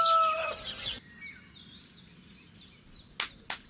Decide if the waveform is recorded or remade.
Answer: recorded